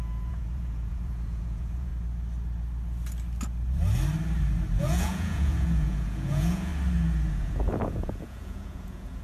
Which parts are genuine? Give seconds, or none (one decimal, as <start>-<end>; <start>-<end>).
1.9-4.8; 6.7-7.3